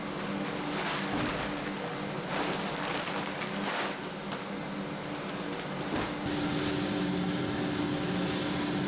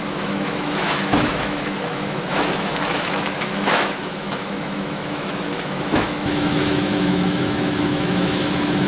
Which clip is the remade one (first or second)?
second